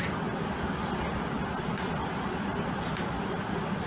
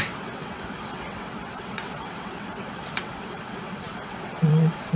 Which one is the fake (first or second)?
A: second